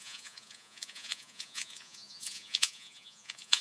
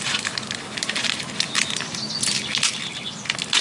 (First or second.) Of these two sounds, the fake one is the first